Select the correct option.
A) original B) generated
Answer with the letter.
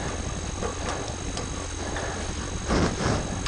A